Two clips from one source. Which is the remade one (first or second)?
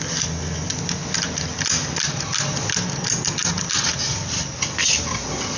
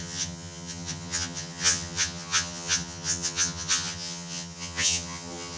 second